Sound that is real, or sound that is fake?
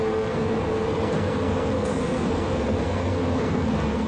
fake